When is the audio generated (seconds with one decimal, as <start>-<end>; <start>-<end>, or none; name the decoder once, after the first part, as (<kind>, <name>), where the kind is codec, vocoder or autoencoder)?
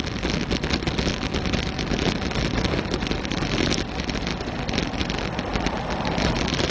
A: none